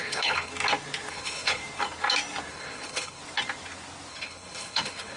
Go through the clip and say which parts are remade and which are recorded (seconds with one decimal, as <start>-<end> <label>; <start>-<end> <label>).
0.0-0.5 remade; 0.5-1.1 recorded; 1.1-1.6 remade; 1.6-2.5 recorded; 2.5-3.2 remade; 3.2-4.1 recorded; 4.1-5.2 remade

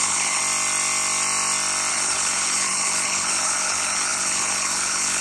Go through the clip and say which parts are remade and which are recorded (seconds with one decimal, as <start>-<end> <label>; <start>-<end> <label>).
0.0-0.4 remade; 0.4-1.9 recorded; 1.9-5.2 remade

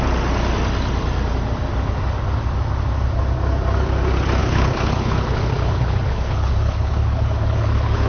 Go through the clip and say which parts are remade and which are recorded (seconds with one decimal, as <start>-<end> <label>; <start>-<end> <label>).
0.0-4.4 recorded; 4.4-8.1 remade

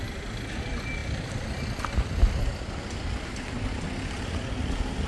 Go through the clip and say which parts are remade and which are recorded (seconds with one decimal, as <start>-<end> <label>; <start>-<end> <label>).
0.0-5.1 recorded

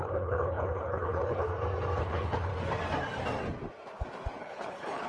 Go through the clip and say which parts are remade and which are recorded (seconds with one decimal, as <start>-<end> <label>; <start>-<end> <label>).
0.0-1.5 remade; 1.5-2.0 recorded; 2.0-2.5 remade; 2.5-4.4 recorded; 4.4-5.1 remade

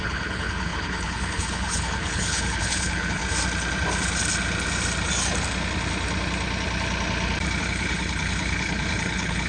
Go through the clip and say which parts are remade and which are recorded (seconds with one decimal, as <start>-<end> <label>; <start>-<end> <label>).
0.0-3.2 remade; 3.2-7.6 recorded; 7.6-9.5 remade

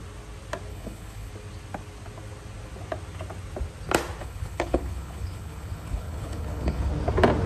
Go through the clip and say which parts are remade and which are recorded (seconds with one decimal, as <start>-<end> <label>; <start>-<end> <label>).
0.0-0.7 recorded; 0.7-1.3 remade; 1.3-4.2 recorded; 4.2-6.9 remade; 6.9-7.5 recorded

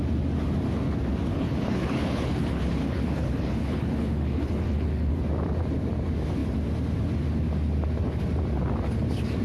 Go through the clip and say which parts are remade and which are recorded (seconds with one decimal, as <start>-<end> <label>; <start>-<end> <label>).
0.0-1.3 recorded; 1.3-5.2 remade; 5.2-9.4 recorded